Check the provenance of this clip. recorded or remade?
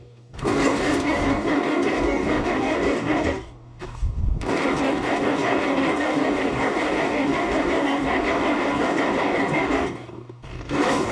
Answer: remade